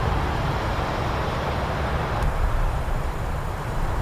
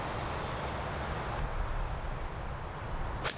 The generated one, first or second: first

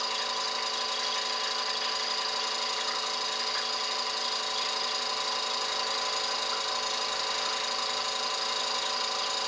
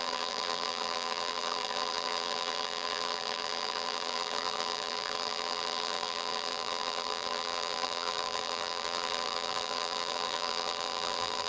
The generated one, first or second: second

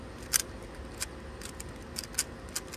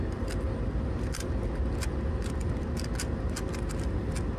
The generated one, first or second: second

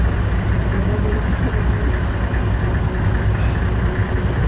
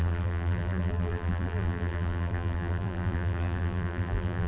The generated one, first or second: second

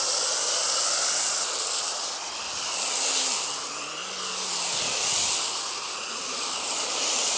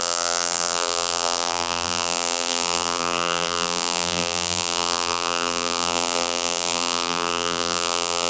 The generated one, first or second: second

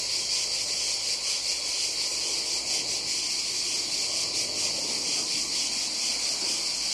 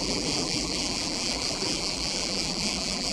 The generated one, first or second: second